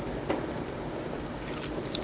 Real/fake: real